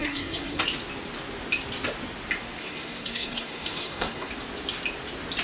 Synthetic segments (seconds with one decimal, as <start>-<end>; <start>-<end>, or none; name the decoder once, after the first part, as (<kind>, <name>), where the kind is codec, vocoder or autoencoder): 0.0-0.6 (codec, SNAC); 2.6-4.3